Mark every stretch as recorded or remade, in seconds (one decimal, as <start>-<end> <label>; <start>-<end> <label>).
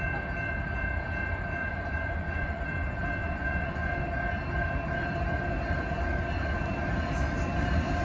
0.0-1.6 recorded; 1.6-2.6 remade; 2.6-3.2 recorded; 3.2-4.0 remade; 4.0-8.0 recorded